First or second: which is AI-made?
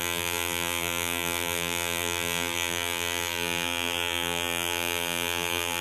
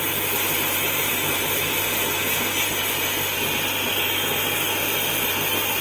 first